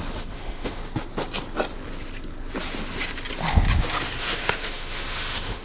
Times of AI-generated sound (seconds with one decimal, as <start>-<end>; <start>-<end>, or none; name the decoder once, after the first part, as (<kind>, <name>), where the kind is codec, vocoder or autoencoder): 0.0-0.8 (autoencoder, DAC-VAE); 4.2-5.6